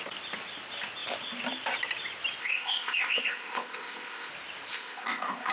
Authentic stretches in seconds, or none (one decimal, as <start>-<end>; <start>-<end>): 0.0-2.4; 4.3-4.7